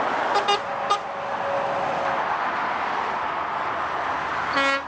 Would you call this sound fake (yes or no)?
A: no